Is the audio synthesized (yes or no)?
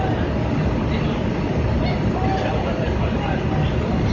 no